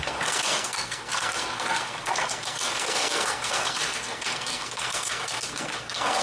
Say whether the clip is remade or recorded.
remade